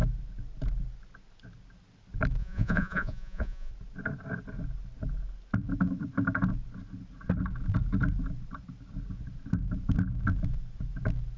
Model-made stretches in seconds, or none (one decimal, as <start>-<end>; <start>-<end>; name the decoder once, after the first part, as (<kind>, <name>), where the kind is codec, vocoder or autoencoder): 2.4-3.7 (vocoder, Vocos)